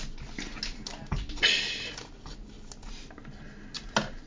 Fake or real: real